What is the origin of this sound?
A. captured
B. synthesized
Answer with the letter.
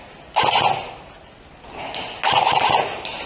A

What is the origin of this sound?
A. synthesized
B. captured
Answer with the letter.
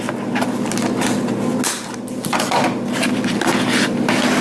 B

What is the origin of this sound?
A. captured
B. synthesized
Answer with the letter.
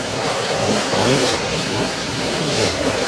B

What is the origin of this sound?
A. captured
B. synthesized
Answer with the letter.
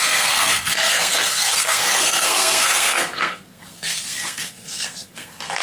B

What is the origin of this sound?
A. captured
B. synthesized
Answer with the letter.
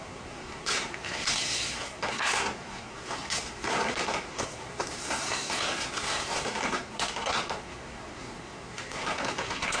B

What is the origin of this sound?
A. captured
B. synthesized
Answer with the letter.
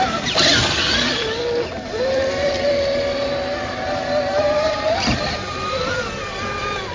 A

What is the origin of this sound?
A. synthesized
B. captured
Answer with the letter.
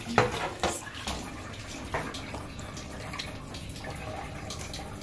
B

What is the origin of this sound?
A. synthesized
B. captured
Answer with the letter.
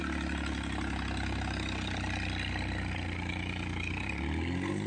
B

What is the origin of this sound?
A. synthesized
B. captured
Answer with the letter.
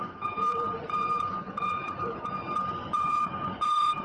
A